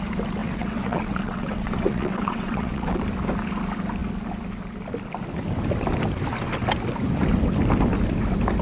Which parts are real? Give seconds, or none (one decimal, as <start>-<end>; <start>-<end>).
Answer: 0.0-0.4; 3.0-8.6